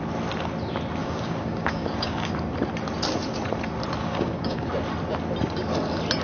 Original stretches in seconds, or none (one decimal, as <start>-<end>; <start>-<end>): 0.0-1.0; 2.3-4.0; 4.7-6.2